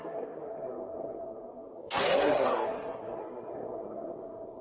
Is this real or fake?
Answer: fake